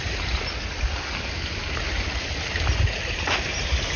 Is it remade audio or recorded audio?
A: recorded